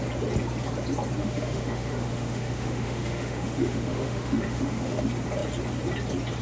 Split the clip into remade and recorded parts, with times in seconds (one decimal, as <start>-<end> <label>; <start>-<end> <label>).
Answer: 0.0-1.2 recorded; 1.2-5.0 remade; 5.0-6.4 recorded